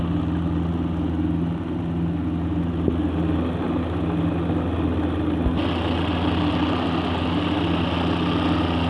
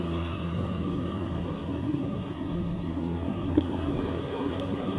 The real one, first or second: first